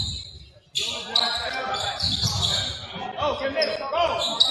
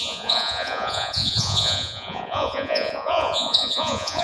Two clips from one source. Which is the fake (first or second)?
second